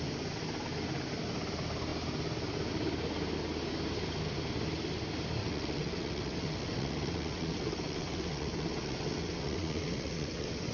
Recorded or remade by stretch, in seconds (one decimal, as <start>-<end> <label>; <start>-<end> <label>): 0.0-5.4 recorded; 5.4-10.7 remade